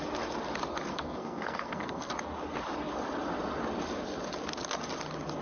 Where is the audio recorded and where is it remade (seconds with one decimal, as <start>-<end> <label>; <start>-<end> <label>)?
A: 0.0-0.9 recorded; 0.9-2.1 remade; 2.1-5.4 recorded